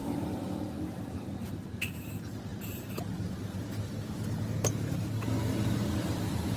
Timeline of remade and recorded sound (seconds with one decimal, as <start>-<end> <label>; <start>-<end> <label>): 0.0-6.6 recorded